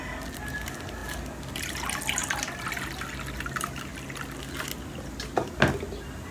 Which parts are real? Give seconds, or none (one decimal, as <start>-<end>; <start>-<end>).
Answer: 0.0-1.0; 1.6-2.2; 2.7-6.3